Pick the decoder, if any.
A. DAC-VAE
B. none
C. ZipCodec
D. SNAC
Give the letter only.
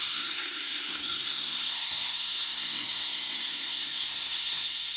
D